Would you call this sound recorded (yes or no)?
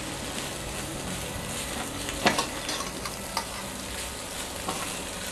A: yes